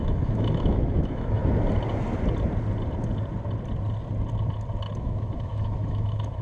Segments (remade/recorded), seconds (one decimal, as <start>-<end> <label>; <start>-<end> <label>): 0.0-1.4 remade; 1.4-5.0 recorded; 5.0-6.4 remade